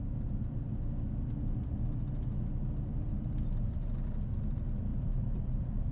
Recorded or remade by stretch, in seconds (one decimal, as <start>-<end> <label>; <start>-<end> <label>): 0.0-4.9 recorded; 4.9-5.9 remade